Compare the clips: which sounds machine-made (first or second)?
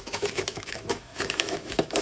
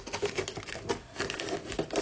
first